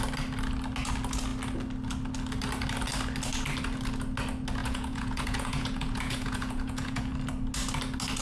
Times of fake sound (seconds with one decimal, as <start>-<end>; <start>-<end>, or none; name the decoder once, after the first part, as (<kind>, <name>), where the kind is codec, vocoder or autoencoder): 4.6-7.1 (vocoder, Vocos)